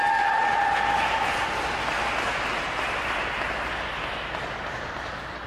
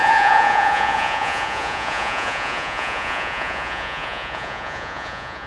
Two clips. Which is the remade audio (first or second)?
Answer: second